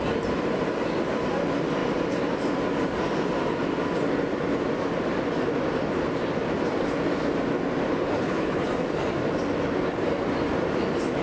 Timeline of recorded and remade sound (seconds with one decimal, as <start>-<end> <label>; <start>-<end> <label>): 0.0-7.9 recorded; 7.9-8.7 remade; 8.7-11.2 recorded